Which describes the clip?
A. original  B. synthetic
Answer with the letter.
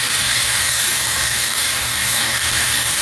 B